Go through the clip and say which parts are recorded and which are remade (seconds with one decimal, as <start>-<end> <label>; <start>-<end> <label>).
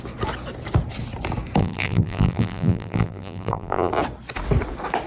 0.0-1.6 recorded; 1.6-3.9 remade; 3.9-5.1 recorded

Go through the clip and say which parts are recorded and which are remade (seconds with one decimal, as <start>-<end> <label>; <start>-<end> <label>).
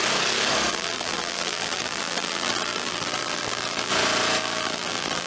0.0-0.7 recorded; 0.7-3.9 remade; 3.9-4.4 recorded; 4.4-5.3 remade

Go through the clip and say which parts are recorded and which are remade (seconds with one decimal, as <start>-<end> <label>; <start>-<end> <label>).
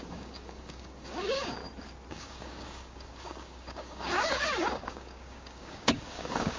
0.0-1.6 remade; 1.6-2.1 recorded; 2.1-6.6 remade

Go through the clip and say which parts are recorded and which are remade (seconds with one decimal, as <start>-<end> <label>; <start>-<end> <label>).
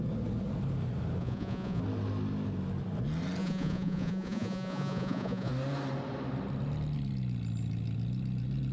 0.0-1.2 recorded; 1.2-1.8 remade; 1.8-3.4 recorded; 3.4-5.5 remade; 5.5-8.7 recorded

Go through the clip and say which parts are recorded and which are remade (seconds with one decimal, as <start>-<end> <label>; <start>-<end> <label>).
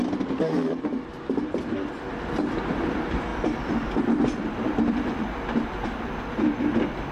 0.0-0.7 recorded; 0.7-7.1 remade